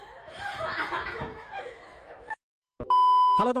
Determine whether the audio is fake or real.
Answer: fake